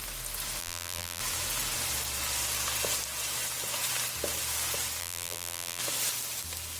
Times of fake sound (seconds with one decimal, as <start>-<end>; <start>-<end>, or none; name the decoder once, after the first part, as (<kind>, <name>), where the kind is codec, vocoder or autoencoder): 0.6-1.2 (vocoder, BigVGAN v2); 5.0-5.8